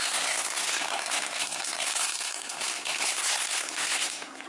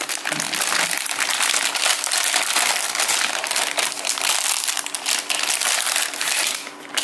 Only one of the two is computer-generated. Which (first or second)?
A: first